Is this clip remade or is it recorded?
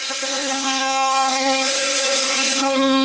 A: remade